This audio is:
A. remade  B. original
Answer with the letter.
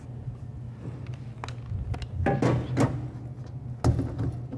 B